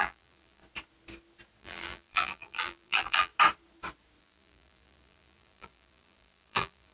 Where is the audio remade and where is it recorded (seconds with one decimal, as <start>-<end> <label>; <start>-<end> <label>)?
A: 0.0-0.6 remade; 0.6-1.6 recorded; 1.6-3.3 remade; 3.3-4.2 recorded; 4.2-6.9 remade